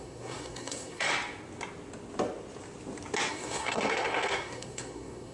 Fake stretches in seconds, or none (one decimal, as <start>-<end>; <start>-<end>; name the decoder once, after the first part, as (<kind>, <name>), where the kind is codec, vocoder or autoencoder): 0.0-1.1 (codec, SNAC); 3.3-5.3